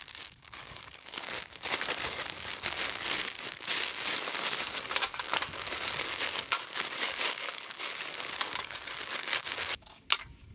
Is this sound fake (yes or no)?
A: yes